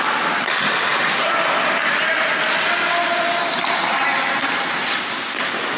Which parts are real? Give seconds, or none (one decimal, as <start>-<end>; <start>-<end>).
0.0-5.8